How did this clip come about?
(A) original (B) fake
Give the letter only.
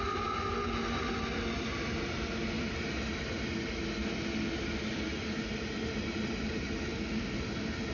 A